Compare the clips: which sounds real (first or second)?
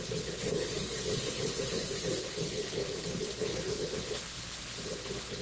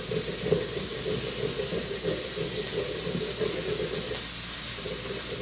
second